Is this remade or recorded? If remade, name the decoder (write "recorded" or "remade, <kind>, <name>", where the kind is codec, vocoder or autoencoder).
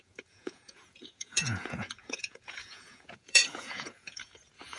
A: remade, vocoder, Vocos